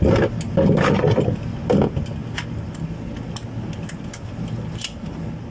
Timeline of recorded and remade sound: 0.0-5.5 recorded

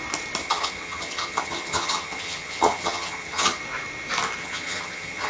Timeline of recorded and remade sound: 0.0-0.4 recorded; 0.4-3.6 remade; 3.6-4.4 recorded; 4.4-5.3 remade

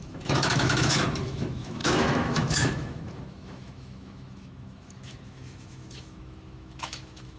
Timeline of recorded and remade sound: 0.0-7.4 remade

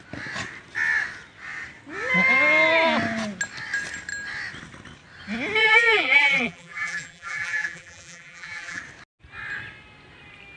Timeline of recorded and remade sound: 0.0-5.6 recorded; 5.6-8.8 remade; 8.8-10.6 recorded

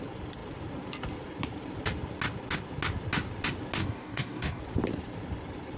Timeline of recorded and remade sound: 0.0-3.8 recorded; 3.8-4.6 remade; 4.6-5.8 recorded

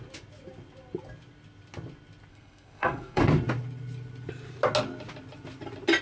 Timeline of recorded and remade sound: 0.0-2.3 recorded; 2.3-3.2 remade; 3.2-6.0 recorded

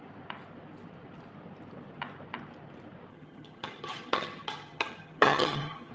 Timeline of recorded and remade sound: 0.0-3.1 recorded; 3.1-5.9 remade